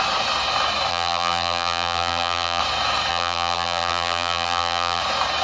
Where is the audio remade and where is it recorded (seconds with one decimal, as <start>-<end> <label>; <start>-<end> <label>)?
0.0-0.9 recorded; 0.9-2.6 remade; 2.6-3.1 recorded; 3.1-5.0 remade; 5.0-5.4 recorded